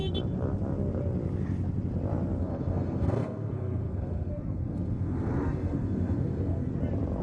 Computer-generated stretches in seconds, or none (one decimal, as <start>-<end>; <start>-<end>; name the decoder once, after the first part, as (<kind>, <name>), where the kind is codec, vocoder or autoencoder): 2.4-6.7 (codec, SNAC)